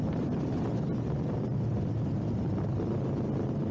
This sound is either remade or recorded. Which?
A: recorded